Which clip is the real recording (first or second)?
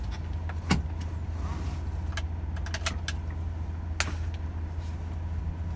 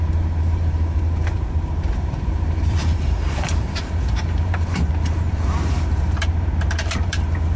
first